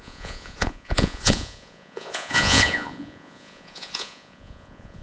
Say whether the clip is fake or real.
fake